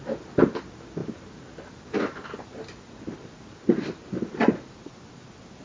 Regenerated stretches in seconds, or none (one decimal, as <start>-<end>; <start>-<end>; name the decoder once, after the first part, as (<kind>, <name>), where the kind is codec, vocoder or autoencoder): none